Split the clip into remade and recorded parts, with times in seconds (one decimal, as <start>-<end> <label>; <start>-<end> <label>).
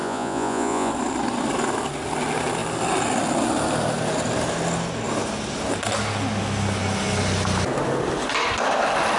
0.0-0.9 remade; 0.9-9.2 recorded